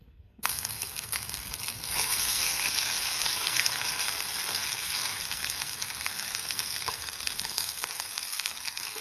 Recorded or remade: remade